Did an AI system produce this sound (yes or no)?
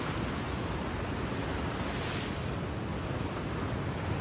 no